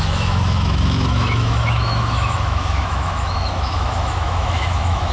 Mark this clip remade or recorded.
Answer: remade